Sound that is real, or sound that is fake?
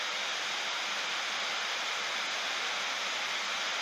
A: real